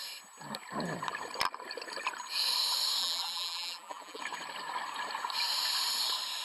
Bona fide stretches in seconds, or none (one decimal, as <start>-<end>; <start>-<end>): 0.0-3.0; 4.2-6.4